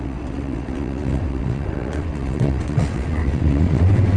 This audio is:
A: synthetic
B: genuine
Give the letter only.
A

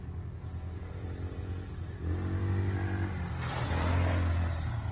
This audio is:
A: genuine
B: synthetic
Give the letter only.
A